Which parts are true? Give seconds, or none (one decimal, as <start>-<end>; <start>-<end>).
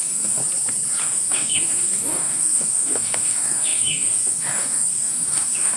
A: 0.4-1.0